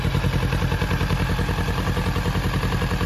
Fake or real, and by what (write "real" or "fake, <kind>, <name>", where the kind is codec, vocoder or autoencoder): real